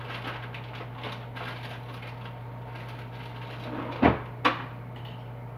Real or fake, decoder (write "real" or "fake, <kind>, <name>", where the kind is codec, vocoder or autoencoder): real